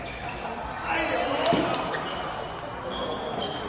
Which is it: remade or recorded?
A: recorded